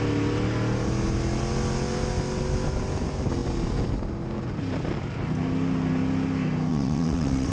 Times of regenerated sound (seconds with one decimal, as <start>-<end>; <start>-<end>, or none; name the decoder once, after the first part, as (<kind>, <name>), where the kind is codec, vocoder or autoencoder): 6.7-7.5 (vocoder, WaveNeXt)